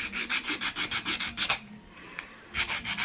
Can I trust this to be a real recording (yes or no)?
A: yes